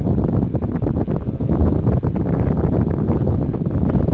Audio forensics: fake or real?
real